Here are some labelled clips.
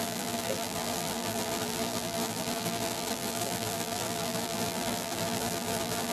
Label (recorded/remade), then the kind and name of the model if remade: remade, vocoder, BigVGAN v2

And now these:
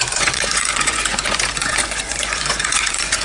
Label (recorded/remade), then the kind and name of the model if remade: remade, vocoder, Vocos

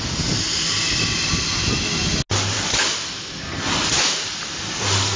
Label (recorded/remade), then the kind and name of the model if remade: recorded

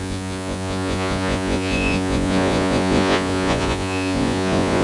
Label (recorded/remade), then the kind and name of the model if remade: remade, vocoder, Vocos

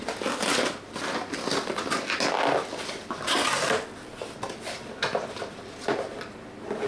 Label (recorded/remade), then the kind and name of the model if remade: recorded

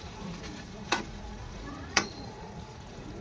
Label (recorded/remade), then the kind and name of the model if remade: remade, vocoder, Vocos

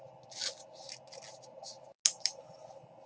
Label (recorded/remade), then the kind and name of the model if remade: recorded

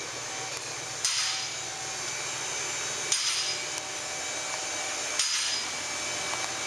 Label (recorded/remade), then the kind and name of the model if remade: recorded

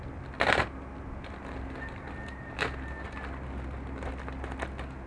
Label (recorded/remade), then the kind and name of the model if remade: recorded